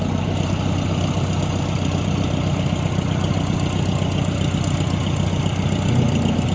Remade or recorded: recorded